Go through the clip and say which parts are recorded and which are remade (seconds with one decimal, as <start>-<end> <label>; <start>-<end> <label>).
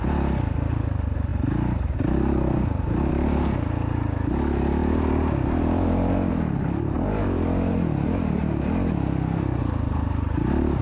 0.0-10.8 recorded